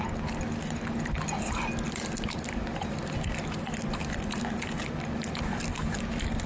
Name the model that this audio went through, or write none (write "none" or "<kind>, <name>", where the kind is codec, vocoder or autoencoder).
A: none